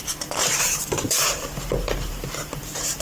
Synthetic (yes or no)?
yes